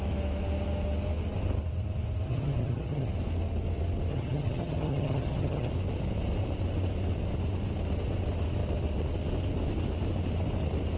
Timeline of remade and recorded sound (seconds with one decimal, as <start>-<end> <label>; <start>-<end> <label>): 0.0-2.3 recorded; 2.3-3.1 remade; 3.1-4.1 recorded; 4.1-5.7 remade; 5.7-11.0 recorded